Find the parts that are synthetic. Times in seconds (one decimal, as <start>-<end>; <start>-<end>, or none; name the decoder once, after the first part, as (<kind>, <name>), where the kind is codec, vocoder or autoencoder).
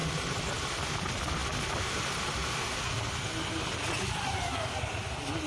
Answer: 0.0-0.6 (vocoder, BigVGAN v2)